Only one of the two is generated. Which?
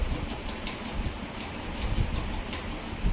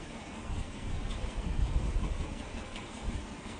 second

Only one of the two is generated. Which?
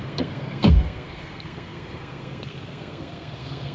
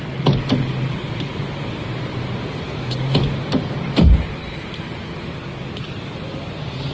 first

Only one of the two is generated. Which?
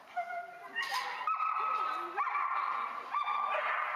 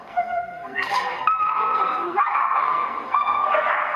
second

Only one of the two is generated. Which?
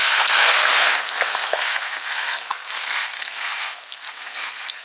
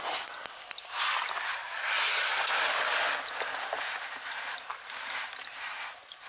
first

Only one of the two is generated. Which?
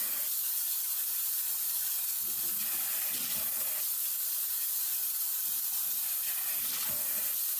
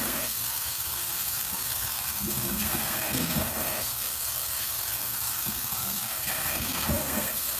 second